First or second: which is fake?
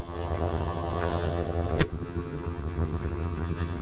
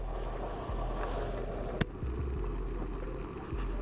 first